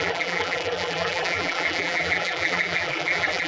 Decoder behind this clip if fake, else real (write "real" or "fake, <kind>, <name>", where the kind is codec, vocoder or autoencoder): fake, vocoder, BigVGAN v2